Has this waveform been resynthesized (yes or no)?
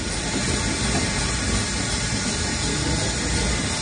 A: no